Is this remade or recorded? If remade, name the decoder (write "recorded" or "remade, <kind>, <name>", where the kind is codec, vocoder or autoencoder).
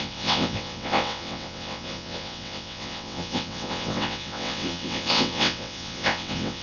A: remade, vocoder, WaveNeXt